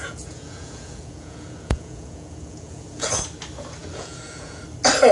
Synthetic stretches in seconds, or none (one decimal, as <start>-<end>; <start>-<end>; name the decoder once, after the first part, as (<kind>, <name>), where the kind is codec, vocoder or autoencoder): 0.0-3.1 (vocoder, Vocos); 3.8-4.6